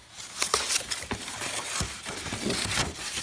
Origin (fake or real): real